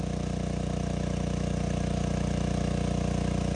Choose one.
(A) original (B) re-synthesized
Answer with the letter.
A